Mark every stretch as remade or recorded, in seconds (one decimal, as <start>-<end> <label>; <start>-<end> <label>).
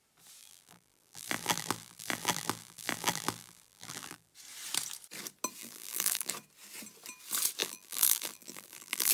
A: 0.0-0.4 recorded; 0.4-4.3 remade; 4.3-5.6 recorded; 5.6-6.3 remade; 6.3-7.6 recorded; 7.6-9.1 remade